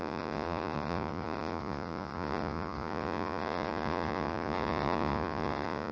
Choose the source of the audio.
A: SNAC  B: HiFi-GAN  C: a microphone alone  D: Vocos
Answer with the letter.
D